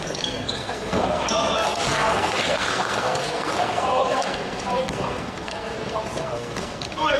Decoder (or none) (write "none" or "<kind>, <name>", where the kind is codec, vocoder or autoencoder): codec, SNAC